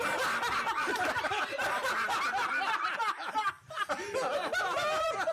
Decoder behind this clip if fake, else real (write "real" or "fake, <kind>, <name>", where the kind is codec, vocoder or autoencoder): real